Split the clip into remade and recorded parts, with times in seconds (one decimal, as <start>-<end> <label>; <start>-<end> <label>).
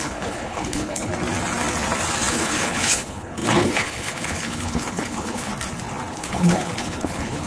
0.0-1.1 remade; 1.1-2.3 recorded; 2.3-5.5 remade; 5.5-6.1 recorded; 6.1-7.5 remade